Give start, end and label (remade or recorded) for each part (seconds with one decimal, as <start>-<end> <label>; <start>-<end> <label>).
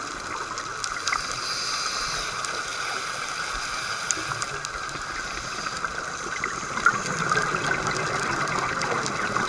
0.0-9.5 recorded